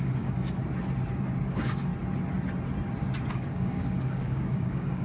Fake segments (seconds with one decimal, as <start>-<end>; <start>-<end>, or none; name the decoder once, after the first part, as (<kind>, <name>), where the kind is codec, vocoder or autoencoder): 0.0-0.6 (codec, DAC); 1.5-1.9; 3.3-5.0